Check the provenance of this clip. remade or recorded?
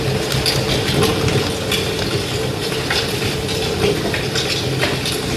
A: recorded